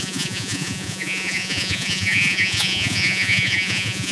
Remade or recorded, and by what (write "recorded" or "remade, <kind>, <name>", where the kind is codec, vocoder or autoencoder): remade, vocoder, Vocos